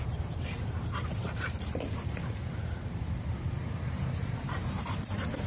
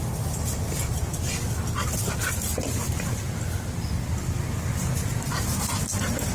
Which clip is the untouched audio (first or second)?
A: second